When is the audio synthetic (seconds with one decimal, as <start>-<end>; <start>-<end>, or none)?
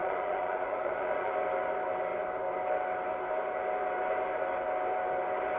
0.0-1.3